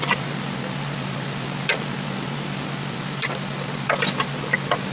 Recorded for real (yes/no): yes